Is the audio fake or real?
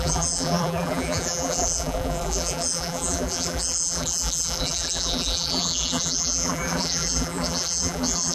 fake